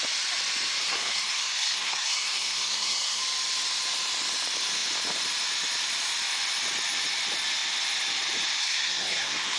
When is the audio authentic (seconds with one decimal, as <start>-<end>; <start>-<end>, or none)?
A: 0.0-0.8; 3.2-8.6